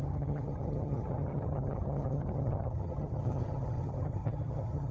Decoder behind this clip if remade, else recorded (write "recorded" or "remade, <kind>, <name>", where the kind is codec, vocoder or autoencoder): remade, vocoder, HiFi-GAN